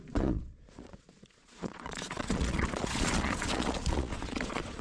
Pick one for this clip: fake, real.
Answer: fake